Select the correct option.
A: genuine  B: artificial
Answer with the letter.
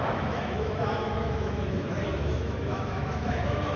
B